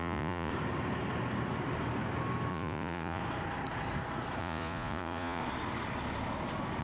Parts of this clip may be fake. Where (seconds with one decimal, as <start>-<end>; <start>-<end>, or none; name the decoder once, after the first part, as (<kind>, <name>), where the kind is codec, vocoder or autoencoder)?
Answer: 0.0-0.5 (vocoder, Vocos); 2.5-3.2; 4.4-5.4